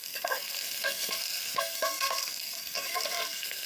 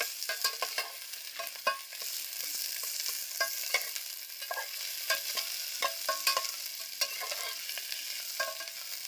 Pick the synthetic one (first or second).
first